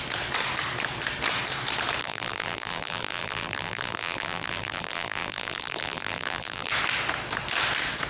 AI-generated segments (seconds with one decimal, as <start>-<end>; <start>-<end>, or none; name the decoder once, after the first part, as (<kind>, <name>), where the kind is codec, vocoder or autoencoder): 2.0-6.7 (vocoder, BigVGAN v2)